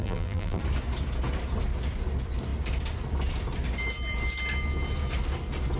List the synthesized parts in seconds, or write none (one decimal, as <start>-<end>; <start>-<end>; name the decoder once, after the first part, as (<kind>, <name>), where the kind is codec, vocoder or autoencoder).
0.0-0.6 (vocoder, BigVGAN v2)